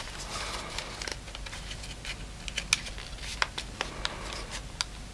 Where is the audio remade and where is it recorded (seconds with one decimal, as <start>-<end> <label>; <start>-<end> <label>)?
0.0-5.1 recorded